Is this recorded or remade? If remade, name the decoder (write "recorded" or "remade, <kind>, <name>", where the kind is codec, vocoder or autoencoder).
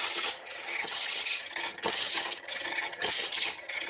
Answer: remade, vocoder, HiFi-GAN